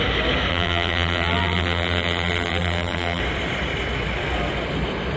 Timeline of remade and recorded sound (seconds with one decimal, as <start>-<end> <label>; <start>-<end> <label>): 0.0-0.5 recorded; 0.5-3.2 remade; 3.2-5.2 recorded